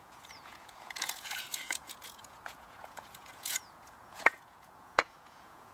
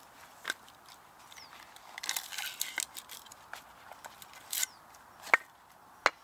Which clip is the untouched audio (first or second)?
second